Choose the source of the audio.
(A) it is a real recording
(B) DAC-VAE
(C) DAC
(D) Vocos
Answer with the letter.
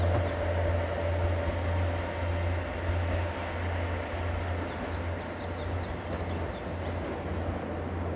A